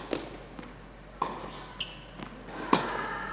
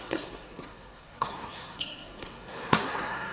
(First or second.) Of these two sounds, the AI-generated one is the second